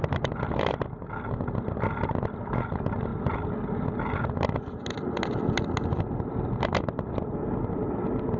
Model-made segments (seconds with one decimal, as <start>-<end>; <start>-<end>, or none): none